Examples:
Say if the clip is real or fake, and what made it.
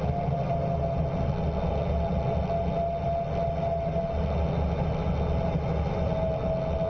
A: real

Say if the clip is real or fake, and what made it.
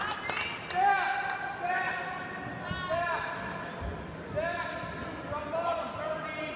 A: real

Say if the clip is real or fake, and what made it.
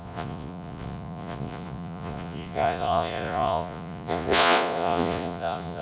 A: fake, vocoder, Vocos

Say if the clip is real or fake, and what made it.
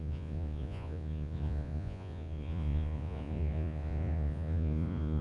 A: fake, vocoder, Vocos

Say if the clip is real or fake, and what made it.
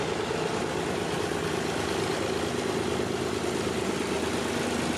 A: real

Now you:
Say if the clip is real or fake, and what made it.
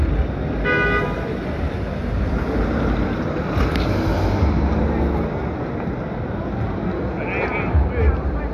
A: real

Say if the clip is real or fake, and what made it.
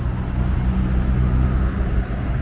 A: real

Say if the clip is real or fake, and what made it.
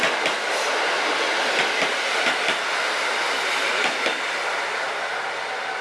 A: real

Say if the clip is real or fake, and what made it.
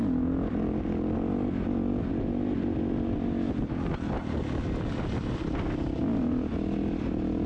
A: real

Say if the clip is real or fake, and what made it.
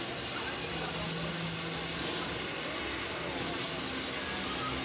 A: real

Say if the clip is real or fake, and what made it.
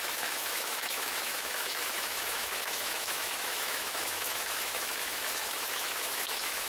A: fake, autoencoder, DAC-VAE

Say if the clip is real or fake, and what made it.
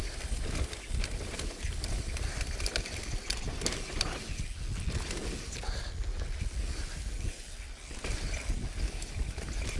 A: real